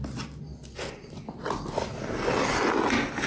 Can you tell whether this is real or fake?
real